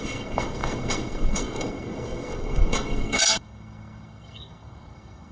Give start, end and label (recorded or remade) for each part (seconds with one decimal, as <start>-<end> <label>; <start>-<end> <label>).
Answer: 0.0-5.3 remade